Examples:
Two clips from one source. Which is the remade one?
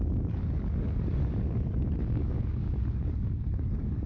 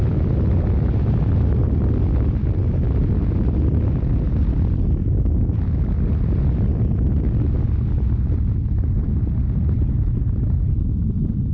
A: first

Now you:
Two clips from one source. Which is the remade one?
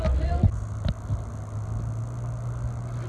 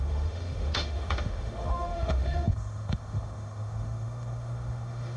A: second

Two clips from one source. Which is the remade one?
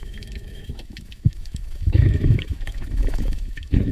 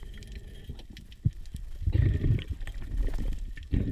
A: first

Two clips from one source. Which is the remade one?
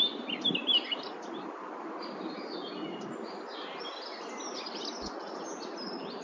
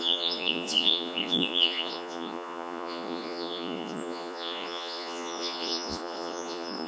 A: second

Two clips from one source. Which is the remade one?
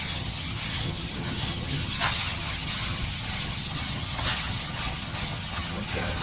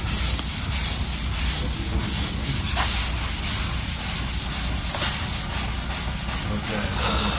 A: first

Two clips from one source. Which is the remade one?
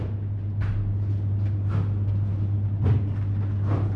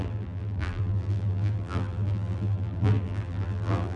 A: second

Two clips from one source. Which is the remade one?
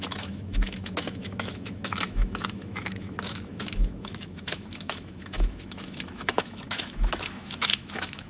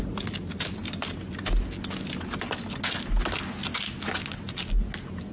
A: first